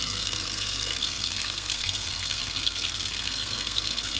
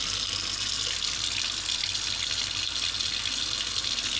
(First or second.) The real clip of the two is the second